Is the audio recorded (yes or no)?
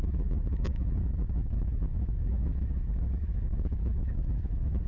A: no